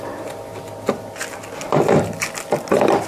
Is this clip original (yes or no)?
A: yes